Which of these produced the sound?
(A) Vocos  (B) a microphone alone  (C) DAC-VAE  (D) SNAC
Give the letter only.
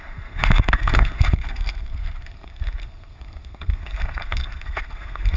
D